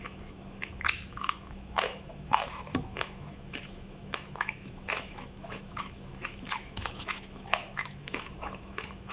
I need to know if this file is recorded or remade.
remade